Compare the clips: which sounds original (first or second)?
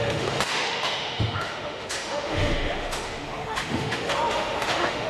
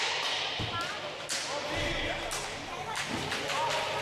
second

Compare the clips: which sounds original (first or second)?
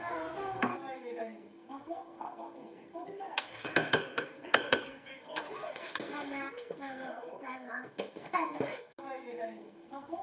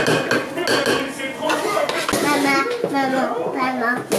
second